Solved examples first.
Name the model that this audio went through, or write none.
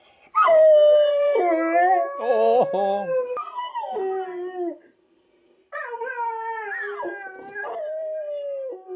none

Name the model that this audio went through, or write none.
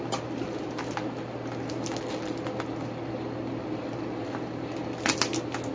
none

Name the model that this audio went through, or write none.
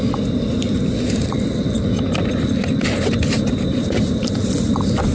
none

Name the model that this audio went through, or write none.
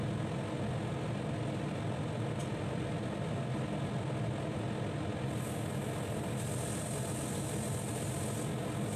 none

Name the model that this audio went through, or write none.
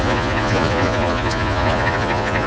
vocoder, Vocos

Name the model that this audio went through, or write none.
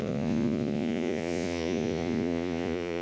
vocoder, Vocos